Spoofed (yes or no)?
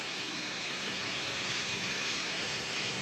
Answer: yes